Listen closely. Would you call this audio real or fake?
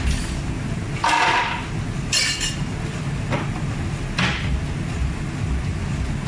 real